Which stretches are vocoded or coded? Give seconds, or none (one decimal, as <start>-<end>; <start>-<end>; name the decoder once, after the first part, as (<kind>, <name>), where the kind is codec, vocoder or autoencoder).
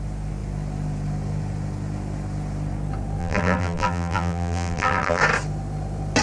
3.2-5.2 (vocoder, BigVGAN v2)